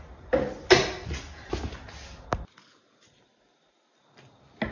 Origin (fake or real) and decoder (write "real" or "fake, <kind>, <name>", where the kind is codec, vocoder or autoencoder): real